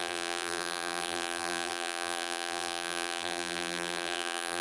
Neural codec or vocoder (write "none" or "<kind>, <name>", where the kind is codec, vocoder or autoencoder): vocoder, BigVGAN v2